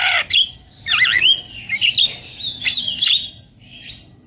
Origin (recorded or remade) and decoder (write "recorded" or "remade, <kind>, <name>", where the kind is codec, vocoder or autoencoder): recorded